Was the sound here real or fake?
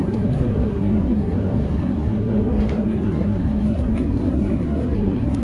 fake